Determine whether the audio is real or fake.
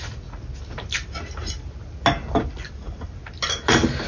real